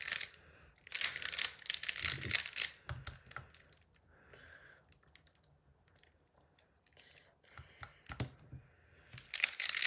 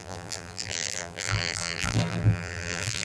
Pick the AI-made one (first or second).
second